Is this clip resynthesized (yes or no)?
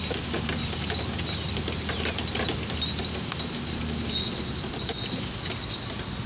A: no